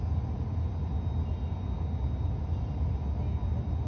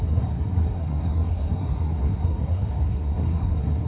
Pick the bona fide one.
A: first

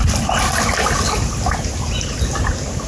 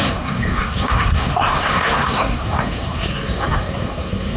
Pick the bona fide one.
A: first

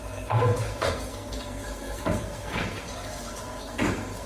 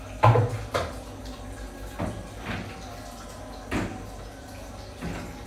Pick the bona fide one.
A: second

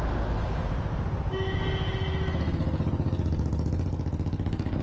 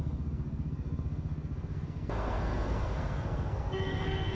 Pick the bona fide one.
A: first